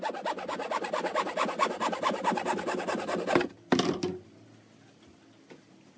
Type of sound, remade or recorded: recorded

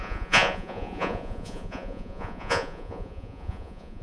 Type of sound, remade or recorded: remade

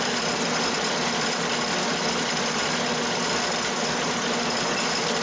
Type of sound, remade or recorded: recorded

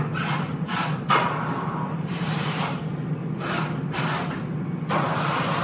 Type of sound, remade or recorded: recorded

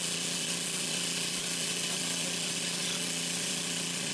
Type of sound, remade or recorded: remade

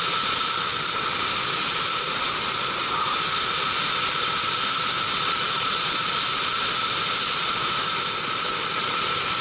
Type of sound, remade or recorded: recorded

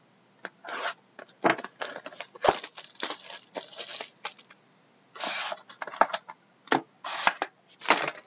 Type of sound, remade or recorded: recorded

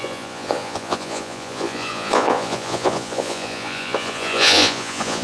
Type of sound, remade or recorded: remade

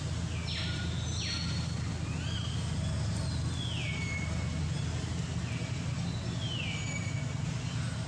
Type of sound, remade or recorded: recorded